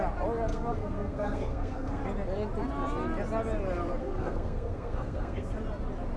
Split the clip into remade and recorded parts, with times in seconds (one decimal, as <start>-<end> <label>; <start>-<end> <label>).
0.0-0.5 recorded; 0.5-2.0 remade; 2.0-4.0 recorded; 4.0-5.5 remade; 5.5-6.2 recorded